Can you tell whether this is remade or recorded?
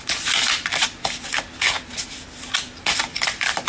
recorded